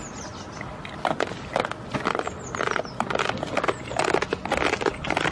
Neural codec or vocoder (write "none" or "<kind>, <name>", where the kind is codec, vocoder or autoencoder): none